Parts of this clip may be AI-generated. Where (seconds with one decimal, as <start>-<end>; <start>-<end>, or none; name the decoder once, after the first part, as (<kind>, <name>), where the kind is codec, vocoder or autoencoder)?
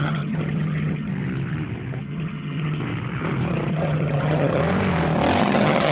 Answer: 0.0-1.1 (vocoder, HiFi-GAN); 2.0-2.8; 3.7-4.6; 5.4-5.9